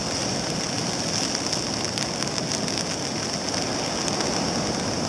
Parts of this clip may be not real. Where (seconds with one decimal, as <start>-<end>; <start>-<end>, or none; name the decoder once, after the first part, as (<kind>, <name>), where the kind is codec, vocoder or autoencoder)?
none